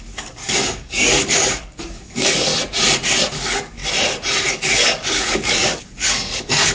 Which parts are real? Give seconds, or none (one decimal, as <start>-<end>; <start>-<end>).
2.5-3.3; 3.8-4.5